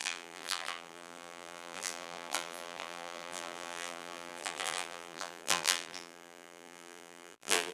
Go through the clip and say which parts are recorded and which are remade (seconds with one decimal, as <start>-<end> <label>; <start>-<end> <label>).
0.0-7.7 remade